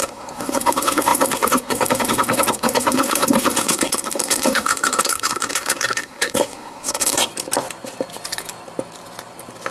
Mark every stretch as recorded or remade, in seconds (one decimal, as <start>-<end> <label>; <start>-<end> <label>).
0.0-7.3 remade; 7.3-9.7 recorded